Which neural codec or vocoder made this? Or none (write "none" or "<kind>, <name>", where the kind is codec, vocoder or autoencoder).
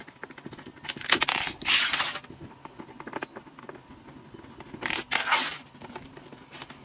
none